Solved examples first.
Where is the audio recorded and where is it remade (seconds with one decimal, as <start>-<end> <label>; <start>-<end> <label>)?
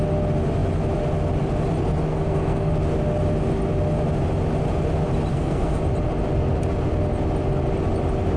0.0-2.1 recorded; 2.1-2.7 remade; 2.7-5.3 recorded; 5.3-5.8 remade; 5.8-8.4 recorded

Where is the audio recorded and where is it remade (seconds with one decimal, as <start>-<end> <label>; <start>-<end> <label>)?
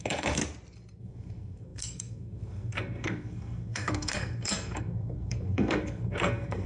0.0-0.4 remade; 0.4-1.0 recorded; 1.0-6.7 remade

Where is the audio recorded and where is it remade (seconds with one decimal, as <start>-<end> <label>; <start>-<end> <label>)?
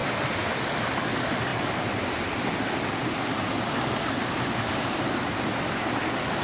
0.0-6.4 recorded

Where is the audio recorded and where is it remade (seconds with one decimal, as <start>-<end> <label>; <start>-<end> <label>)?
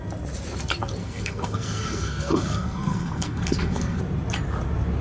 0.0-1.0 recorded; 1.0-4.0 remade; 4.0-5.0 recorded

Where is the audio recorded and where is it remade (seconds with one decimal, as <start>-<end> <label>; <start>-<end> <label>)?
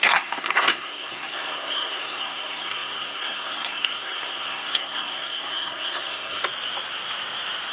0.0-6.4 remade; 6.4-7.7 recorded